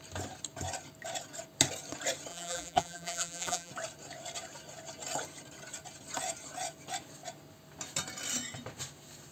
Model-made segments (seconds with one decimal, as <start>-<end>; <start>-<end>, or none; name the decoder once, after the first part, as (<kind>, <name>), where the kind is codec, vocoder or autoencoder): 2.3-3.7 (vocoder, BigVGAN v2)